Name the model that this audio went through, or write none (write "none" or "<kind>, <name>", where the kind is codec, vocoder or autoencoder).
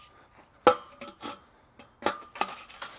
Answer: none